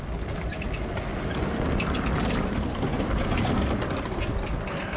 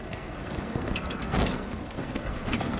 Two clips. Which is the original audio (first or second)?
first